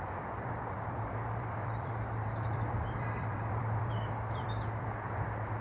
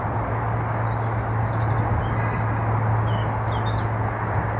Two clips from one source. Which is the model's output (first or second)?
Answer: first